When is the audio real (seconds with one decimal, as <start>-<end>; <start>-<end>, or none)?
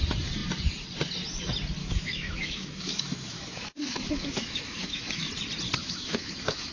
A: 0.0-1.8; 5.3-5.8